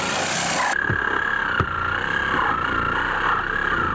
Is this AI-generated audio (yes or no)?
no